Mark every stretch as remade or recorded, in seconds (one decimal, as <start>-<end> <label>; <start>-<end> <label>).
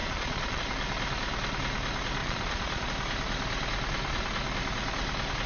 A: 0.0-0.6 remade; 0.6-2.2 recorded; 2.2-2.9 remade; 2.9-5.5 recorded